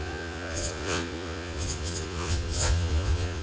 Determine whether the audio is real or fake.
fake